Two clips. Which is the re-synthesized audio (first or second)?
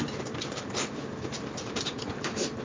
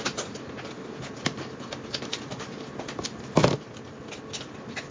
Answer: first